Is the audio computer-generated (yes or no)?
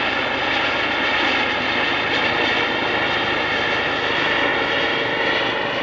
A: no